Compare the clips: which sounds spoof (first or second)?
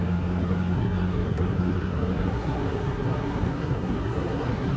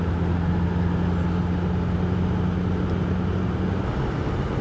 first